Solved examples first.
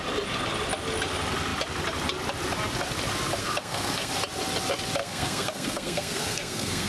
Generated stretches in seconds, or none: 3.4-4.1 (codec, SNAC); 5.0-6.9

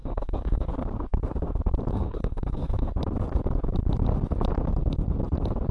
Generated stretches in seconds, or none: 0.0-0.7 (codec, SNAC); 1.9-2.9

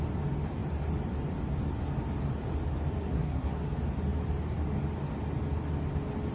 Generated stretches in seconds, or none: 3.0-3.6 (codec, SNAC)